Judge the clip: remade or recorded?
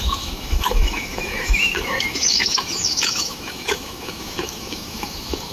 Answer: remade